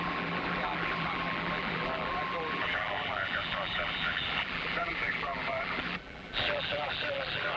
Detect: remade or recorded remade